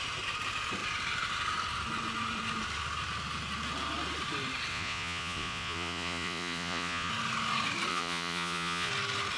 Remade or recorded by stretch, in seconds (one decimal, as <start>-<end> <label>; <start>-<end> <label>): 0.0-4.7 recorded; 4.7-7.1 remade; 7.1-7.9 recorded; 7.9-8.9 remade; 8.9-9.4 recorded